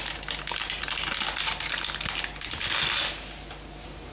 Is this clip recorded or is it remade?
recorded